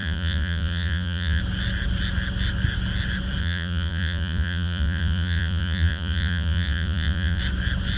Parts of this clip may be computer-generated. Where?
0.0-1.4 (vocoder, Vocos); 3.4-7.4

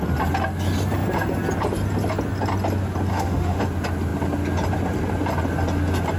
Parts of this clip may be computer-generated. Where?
3.1-3.6 (autoencoder, DAC-VAE)

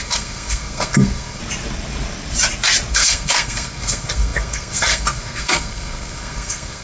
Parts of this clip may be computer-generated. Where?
0.0-1.4 (codec, SNAC); 2.9-6.8

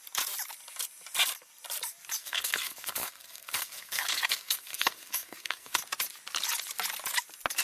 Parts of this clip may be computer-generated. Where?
2.2-5.8 (codec, SNAC)